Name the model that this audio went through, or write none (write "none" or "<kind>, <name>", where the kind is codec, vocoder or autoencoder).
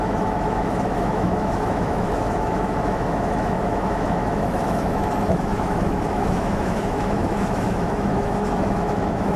autoencoder, DAC-VAE